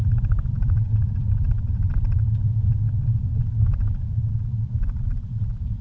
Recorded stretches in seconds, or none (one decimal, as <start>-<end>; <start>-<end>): 0.8-2.9; 3.3-4.8

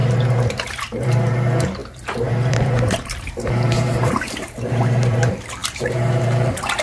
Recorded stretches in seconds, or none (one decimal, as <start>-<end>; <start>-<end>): 0.0-0.7

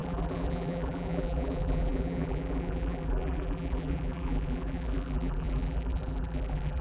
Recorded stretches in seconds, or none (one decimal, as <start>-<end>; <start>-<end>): none

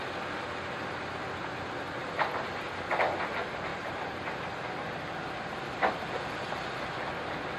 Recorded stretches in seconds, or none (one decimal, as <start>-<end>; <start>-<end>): 0.0-3.7; 4.4-5.2; 6.5-7.6

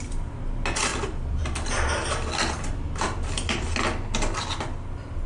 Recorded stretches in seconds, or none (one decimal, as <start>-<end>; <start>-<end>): 0.0-0.9; 3.8-5.3

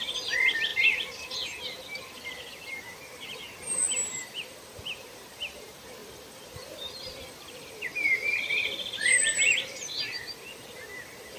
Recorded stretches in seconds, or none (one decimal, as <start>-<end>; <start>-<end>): none

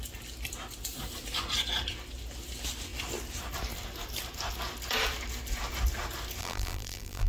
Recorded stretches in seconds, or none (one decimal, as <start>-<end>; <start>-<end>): 0.0-6.4

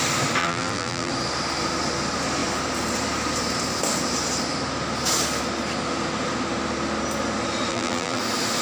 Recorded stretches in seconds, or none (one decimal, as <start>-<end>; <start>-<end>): 0.0-0.4; 1.1-7.7; 8.2-8.6